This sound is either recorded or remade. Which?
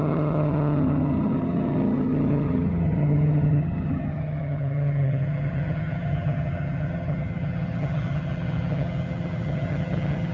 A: remade